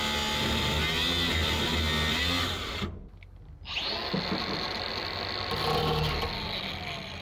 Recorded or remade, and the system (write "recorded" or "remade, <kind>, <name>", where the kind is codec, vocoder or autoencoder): recorded